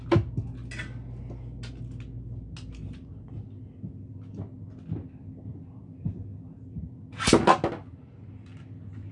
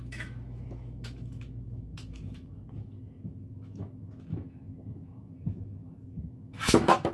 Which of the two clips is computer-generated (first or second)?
second